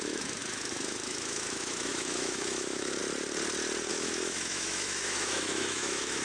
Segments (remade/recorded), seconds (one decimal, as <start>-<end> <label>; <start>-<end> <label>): 0.0-3.0 remade; 3.0-3.9 recorded; 3.9-6.2 remade